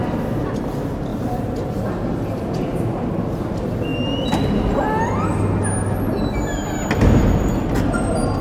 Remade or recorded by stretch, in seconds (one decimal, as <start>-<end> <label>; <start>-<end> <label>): 0.0-1.1 recorded; 1.1-1.9 remade; 1.9-8.4 recorded